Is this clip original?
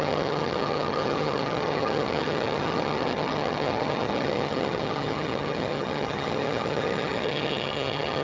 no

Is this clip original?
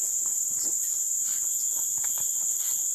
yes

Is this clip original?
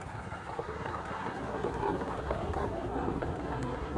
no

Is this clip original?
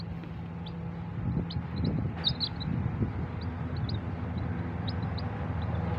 yes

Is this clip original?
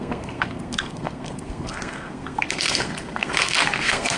no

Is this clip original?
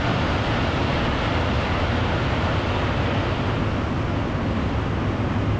yes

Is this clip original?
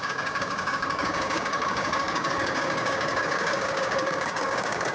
no